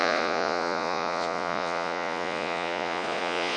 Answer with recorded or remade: remade